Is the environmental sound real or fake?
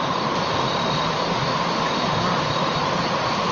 real